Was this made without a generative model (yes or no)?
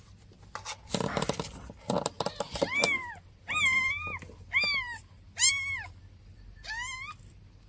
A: yes